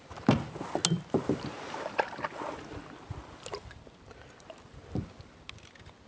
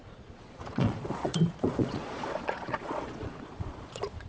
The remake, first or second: second